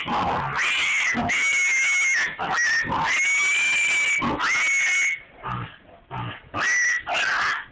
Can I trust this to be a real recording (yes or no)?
yes